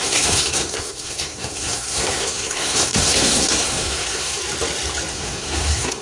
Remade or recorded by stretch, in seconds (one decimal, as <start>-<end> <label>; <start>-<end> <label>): 0.0-4.4 remade; 4.4-5.1 recorded; 5.1-6.0 remade